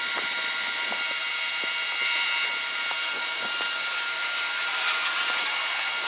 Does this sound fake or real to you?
real